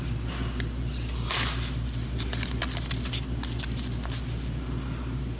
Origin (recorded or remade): recorded